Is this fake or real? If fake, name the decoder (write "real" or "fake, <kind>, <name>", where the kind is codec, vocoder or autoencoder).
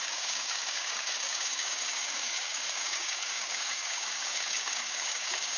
fake, codec, DAC